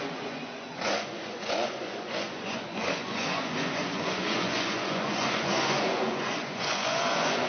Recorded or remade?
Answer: remade